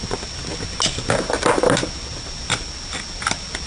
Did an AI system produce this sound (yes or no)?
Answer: no